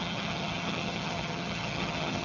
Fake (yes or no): yes